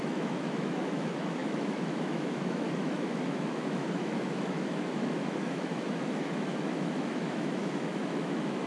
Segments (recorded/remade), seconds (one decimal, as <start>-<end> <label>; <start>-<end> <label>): 0.0-8.7 remade